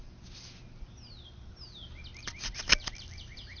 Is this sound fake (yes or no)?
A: no